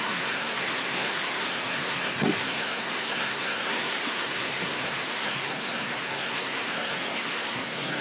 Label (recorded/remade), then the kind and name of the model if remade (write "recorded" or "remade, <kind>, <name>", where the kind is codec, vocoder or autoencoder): remade, codec, SNAC